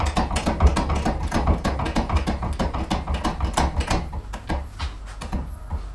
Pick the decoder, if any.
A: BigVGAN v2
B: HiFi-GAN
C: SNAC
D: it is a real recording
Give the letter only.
D